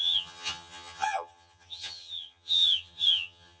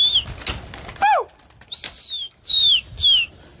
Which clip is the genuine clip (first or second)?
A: second